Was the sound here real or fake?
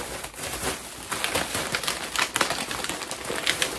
real